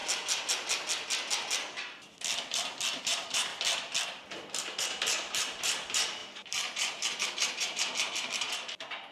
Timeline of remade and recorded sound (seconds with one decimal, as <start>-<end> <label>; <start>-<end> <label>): 0.0-3.0 recorded; 3.0-3.5 remade; 3.5-4.8 recorded; 4.8-9.1 remade